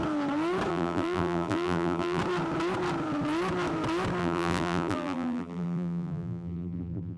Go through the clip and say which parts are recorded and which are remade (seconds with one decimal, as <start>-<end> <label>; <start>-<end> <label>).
0.0-0.7 recorded; 0.7-2.2 remade; 2.2-4.2 recorded; 4.2-7.2 remade